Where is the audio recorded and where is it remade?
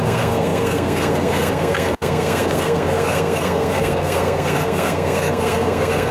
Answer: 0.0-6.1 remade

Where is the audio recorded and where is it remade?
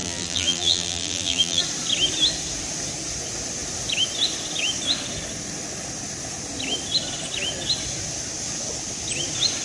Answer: 0.0-1.6 remade; 1.6-9.6 recorded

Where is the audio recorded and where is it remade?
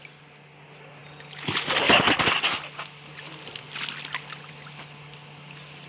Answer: 0.0-5.9 recorded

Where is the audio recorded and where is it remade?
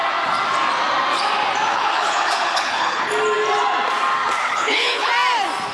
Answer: 0.0-1.7 recorded; 1.7-3.1 remade; 3.1-4.4 recorded; 4.4-5.1 remade; 5.1-5.7 recorded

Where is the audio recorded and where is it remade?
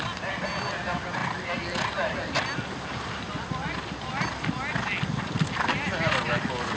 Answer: 0.0-6.8 recorded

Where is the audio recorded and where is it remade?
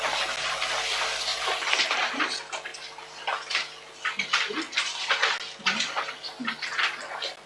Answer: 0.0-1.3 recorded; 1.3-2.1 remade; 2.1-7.5 recorded